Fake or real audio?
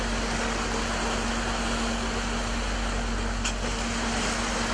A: real